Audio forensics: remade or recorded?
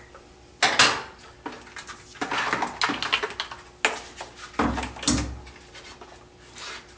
recorded